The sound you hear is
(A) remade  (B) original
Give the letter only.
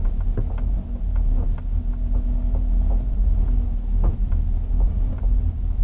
B